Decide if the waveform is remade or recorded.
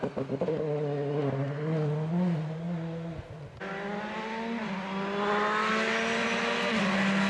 recorded